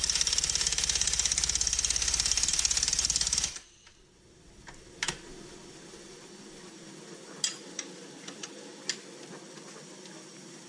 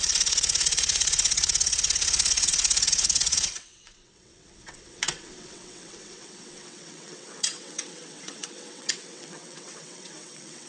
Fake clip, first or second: second